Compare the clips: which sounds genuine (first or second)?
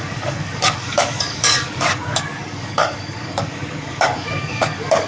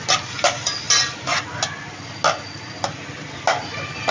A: second